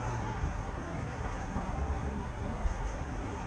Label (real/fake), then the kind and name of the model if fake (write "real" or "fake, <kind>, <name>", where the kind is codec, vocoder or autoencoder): fake, codec, SNAC